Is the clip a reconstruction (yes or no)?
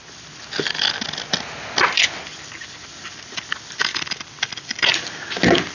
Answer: no